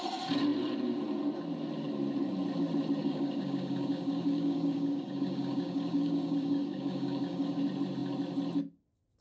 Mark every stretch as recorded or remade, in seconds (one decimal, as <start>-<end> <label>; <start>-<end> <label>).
0.0-3.0 recorded; 3.0-7.6 remade; 7.6-9.2 recorded